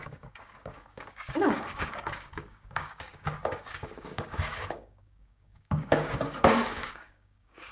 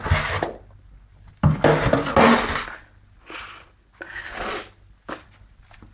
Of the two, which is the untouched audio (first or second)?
second